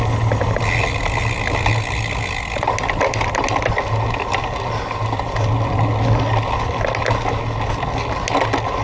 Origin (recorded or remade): recorded